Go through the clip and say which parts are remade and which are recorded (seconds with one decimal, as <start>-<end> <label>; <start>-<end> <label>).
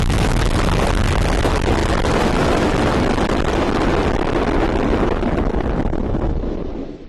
0.0-7.1 remade